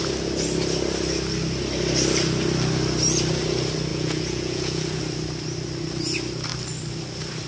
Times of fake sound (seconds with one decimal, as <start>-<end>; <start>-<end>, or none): 3.9-5.0